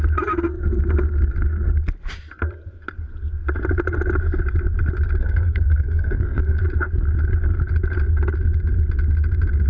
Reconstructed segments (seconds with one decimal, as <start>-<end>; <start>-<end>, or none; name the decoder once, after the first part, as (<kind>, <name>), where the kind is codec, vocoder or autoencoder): 5.2-6.6 (codec, SNAC)